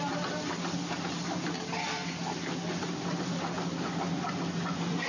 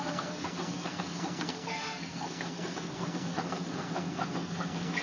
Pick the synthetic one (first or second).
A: second